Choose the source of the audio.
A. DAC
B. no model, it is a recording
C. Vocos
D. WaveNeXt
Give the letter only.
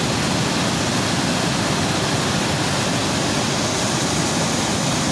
B